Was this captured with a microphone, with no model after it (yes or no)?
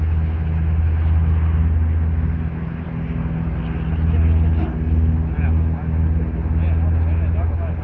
yes